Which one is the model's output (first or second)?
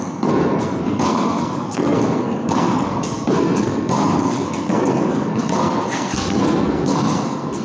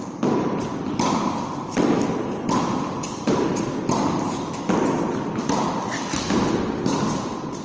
first